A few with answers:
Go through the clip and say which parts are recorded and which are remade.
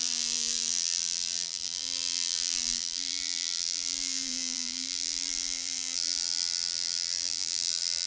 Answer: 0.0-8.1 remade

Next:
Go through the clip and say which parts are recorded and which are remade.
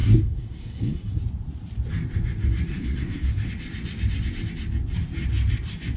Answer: 0.0-1.2 remade; 1.2-2.7 recorded; 2.7-3.5 remade; 3.5-6.0 recorded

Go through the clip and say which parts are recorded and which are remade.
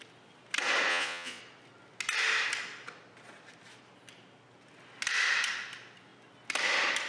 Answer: 0.0-0.9 recorded; 0.9-1.4 remade; 1.4-7.1 recorded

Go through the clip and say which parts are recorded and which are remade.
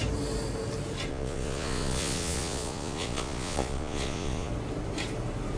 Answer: 0.0-1.1 recorded; 1.1-4.5 remade; 4.5-5.6 recorded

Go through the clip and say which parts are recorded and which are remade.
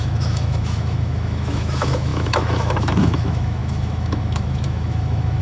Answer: 0.0-5.4 remade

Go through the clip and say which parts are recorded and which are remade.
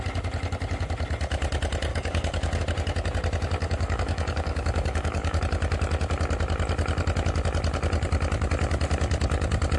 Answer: 0.0-1.9 recorded; 1.9-2.6 remade; 2.6-3.6 recorded; 3.6-5.4 remade; 5.4-9.8 recorded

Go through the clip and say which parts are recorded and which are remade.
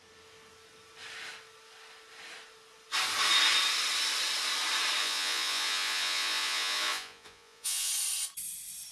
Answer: 0.0-5.0 recorded; 5.0-7.9 remade; 7.9-8.9 recorded